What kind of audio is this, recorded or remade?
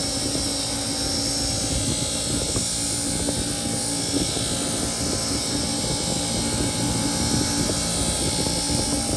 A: recorded